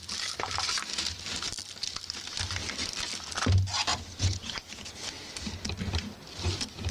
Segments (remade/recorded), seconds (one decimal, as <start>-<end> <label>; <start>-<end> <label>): 0.0-3.9 recorded; 3.9-4.5 remade; 4.5-6.9 recorded